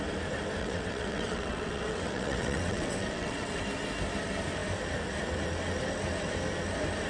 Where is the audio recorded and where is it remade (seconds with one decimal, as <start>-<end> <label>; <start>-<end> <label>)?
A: 0.0-0.6 recorded; 0.6-3.6 remade; 3.6-7.1 recorded